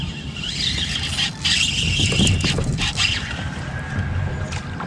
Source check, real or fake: real